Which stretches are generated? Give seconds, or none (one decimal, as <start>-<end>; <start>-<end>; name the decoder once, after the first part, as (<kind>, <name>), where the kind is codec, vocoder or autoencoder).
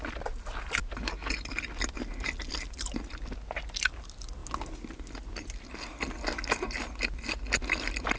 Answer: none